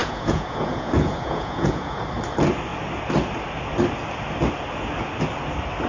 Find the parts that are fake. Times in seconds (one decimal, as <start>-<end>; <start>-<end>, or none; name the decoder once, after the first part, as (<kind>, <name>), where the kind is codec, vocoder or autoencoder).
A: 0.0-2.0 (vocoder, Vocos)